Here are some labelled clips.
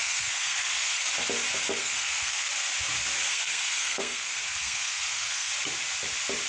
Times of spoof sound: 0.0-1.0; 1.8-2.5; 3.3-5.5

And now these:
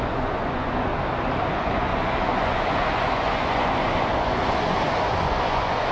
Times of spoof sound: 0.0-0.9; 1.5-5.9